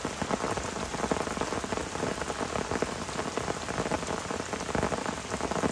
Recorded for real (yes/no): yes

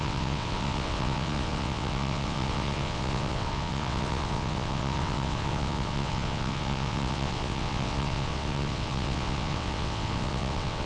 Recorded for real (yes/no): no